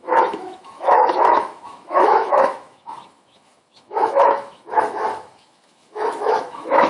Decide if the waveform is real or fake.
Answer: fake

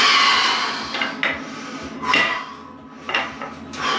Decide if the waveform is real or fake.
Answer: real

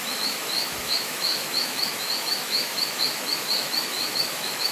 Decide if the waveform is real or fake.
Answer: fake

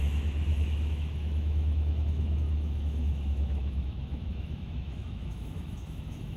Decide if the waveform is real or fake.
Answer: fake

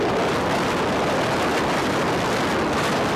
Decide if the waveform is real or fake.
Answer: real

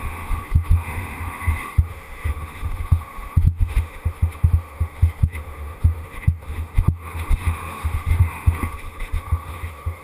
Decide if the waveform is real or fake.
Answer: fake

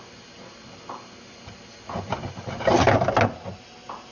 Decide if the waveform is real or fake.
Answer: real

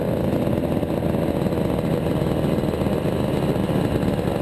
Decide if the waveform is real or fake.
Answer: real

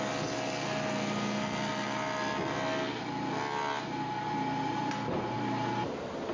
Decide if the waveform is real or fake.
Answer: real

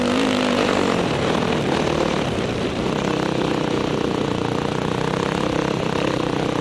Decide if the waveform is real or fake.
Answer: real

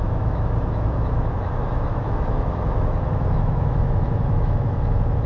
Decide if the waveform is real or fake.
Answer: fake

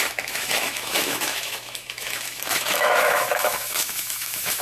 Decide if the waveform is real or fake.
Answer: fake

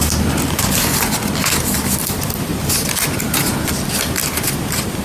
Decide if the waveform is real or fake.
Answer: real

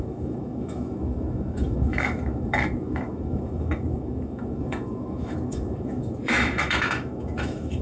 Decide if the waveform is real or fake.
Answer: fake